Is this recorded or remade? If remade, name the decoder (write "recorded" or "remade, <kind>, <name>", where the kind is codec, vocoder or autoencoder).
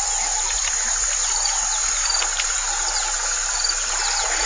recorded